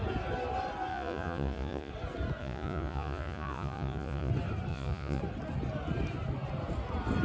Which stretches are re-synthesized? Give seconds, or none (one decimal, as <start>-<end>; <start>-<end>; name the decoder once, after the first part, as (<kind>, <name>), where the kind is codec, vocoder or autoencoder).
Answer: 0.9-1.9 (vocoder, Vocos); 2.4-4.3; 4.7-5.2